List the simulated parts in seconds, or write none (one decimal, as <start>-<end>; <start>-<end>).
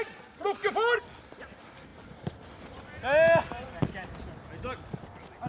none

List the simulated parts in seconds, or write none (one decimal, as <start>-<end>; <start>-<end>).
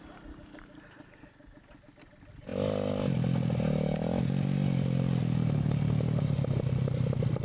none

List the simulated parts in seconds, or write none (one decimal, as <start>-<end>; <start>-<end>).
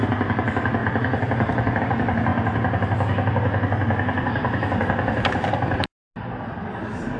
none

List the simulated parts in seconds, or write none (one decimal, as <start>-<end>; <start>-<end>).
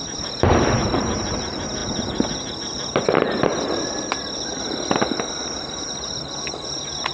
none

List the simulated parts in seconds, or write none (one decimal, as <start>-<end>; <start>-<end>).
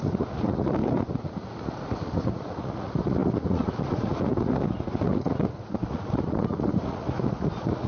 0.0-7.9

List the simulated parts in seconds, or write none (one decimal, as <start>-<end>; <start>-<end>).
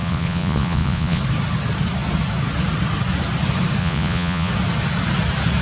0.0-1.2; 3.8-4.5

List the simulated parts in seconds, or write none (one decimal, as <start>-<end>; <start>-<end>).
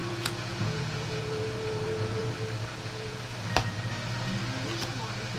0.0-2.3; 2.7-3.2